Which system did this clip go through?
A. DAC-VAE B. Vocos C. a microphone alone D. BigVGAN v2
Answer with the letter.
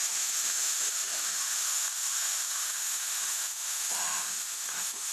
A